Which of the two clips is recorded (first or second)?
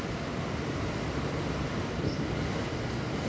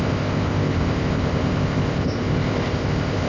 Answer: first